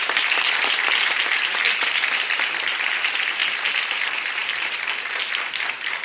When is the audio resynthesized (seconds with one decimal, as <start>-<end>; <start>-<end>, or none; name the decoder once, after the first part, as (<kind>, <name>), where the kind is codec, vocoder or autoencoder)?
none